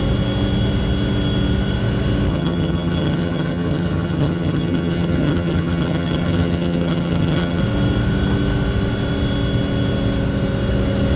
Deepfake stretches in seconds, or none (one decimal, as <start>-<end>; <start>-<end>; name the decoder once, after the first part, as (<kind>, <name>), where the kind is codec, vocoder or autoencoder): 2.3-7.6 (vocoder, HiFi-GAN)